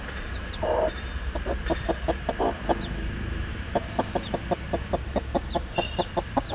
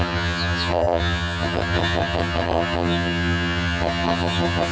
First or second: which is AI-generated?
second